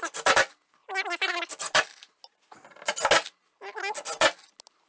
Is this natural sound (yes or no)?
yes